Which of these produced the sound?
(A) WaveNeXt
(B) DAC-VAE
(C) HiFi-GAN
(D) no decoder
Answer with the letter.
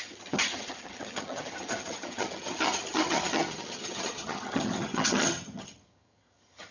C